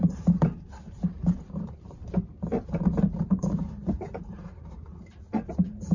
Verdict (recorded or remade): remade